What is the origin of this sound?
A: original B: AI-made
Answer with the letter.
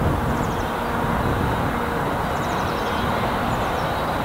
A